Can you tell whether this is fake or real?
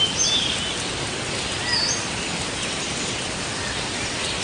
real